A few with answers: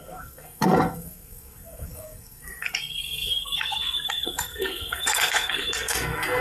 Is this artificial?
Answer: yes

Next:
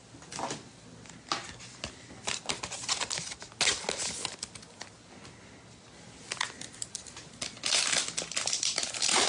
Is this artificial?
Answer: no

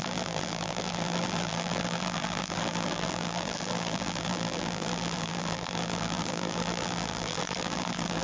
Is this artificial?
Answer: yes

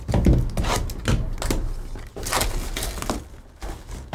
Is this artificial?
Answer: no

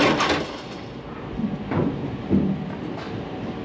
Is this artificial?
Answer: no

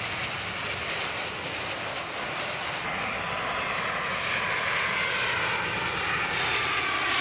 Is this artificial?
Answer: no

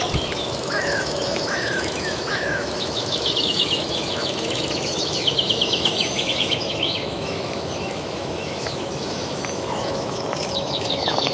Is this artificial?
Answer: yes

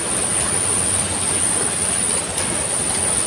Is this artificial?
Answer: no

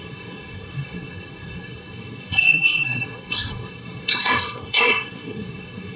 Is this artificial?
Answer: yes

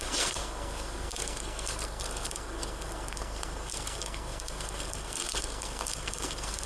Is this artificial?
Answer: yes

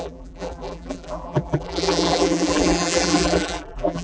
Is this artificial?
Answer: yes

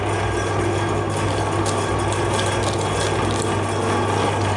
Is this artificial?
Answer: no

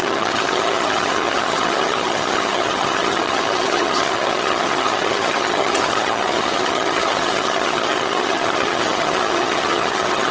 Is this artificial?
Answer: yes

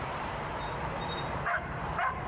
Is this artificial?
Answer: yes